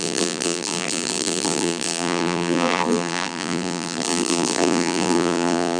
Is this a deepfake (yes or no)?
yes